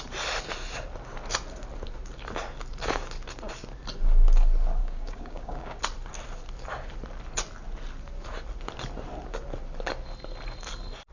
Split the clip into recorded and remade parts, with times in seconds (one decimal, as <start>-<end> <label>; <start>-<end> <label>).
0.0-4.8 recorded; 4.8-5.8 remade; 5.8-11.1 recorded